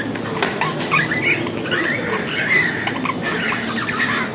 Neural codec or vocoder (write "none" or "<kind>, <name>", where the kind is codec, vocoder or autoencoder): none